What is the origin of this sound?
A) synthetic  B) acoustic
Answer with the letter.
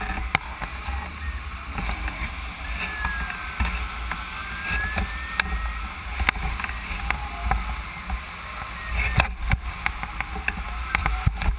B